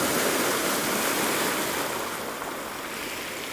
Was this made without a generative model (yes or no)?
yes